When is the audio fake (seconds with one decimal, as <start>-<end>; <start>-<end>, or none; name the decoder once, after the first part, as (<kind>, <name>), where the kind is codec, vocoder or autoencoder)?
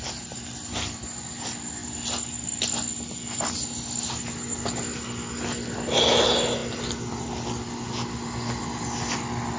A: none